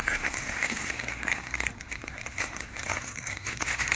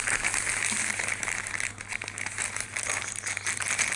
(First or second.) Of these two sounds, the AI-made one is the first